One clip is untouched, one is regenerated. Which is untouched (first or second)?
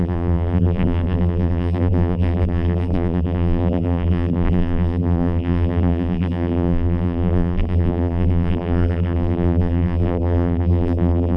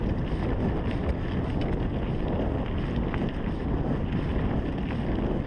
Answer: second